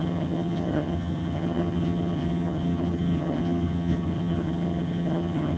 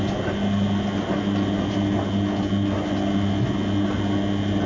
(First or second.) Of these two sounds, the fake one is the first